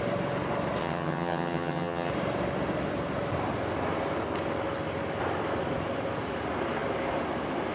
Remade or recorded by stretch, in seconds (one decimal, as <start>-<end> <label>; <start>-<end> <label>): 0.0-0.8 recorded; 0.8-2.1 remade; 2.1-7.7 recorded